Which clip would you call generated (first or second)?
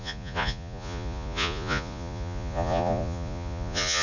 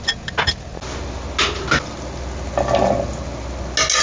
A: first